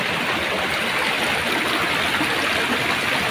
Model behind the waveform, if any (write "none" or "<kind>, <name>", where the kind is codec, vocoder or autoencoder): none